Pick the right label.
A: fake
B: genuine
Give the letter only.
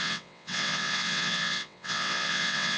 A